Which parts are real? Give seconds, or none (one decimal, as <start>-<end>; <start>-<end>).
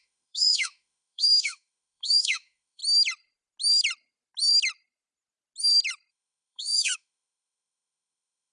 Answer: 2.8-6.1